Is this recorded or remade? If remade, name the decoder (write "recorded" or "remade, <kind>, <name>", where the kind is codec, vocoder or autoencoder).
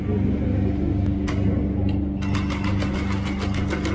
recorded